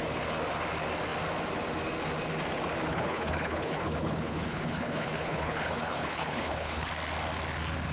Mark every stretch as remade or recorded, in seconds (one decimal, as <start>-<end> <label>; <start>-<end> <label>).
0.0-2.9 recorded; 2.9-6.9 remade; 6.9-7.9 recorded